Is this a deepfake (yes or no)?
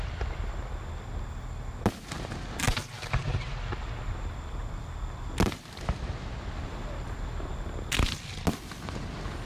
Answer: no